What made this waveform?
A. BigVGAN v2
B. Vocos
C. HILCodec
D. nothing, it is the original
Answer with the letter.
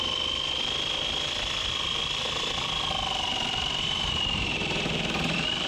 A